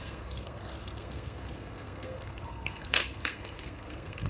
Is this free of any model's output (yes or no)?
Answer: no